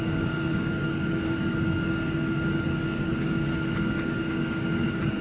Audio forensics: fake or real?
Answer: fake